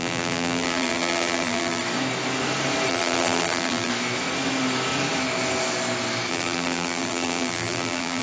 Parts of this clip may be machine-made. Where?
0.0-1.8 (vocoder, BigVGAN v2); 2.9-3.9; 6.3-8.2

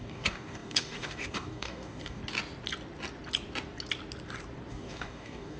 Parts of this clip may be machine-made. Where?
0.0-2.2 (codec, DAC); 4.7-5.6